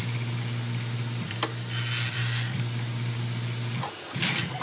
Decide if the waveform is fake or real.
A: real